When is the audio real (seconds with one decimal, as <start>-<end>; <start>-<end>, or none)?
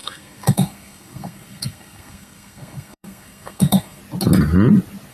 4.0-5.1